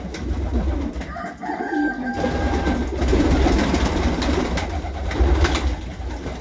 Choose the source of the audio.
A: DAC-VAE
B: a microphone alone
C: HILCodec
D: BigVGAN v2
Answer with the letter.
B